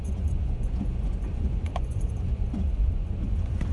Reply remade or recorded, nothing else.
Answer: remade